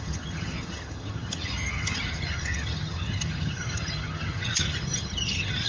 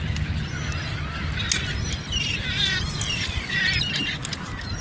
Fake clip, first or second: first